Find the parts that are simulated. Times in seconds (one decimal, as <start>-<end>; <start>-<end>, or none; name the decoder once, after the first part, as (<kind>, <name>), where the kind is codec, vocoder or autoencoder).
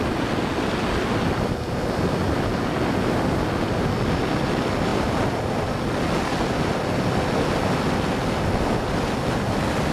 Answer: none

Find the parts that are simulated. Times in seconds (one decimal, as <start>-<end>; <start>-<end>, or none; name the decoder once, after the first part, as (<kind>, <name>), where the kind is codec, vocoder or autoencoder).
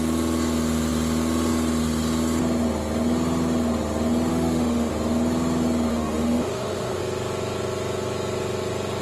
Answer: 4.3-4.9 (autoencoder, DAC-VAE); 5.9-7.0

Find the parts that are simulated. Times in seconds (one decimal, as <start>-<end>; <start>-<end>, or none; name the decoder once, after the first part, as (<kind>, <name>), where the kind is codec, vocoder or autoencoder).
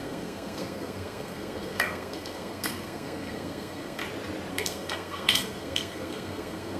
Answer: 0.0-4.0 (codec, SNAC); 4.5-6.8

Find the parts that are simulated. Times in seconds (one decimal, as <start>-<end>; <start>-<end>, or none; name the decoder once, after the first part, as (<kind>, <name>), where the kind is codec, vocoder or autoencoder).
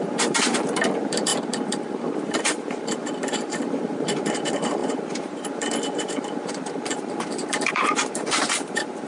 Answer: 0.0-9.1 (vocoder, BigVGAN v2)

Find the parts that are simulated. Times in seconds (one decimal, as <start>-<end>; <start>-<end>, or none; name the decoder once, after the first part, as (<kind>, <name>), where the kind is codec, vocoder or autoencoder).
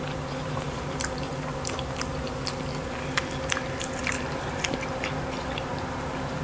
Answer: 0.0-1.3 (vocoder, BigVGAN v2); 4.0-6.4